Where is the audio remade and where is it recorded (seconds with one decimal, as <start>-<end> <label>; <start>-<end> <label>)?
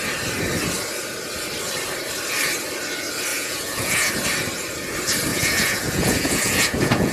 0.0-3.3 recorded; 3.3-4.1 remade; 4.1-5.3 recorded; 5.3-7.1 remade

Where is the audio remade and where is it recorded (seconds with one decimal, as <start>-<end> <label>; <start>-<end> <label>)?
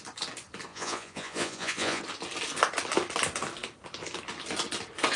0.0-0.7 recorded; 0.7-2.0 remade; 2.0-5.2 recorded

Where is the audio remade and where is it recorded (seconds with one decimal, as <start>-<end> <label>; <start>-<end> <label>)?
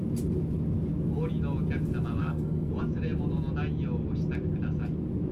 0.0-2.2 recorded; 2.2-2.7 remade; 2.7-5.3 recorded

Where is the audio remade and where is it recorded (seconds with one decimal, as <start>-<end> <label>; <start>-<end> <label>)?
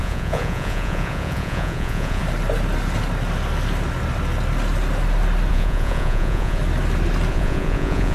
0.0-2.2 remade; 2.2-5.5 recorded; 5.5-6.6 remade; 6.6-7.3 recorded; 7.3-8.1 remade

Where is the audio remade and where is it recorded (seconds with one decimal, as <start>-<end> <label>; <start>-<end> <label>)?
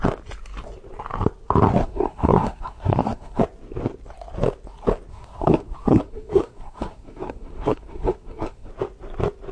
0.0-1.8 recorded; 1.8-3.4 remade; 3.4-5.1 recorded; 5.1-8.7 remade; 8.7-9.5 recorded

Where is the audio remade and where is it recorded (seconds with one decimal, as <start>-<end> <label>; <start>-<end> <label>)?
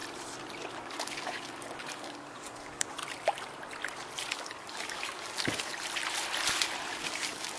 0.0-0.8 recorded; 0.8-3.0 remade; 3.0-4.3 recorded; 4.3-5.7 remade; 5.7-6.9 recorded; 6.9-7.6 remade